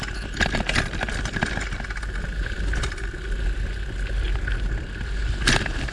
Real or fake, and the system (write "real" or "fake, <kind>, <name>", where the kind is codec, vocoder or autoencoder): real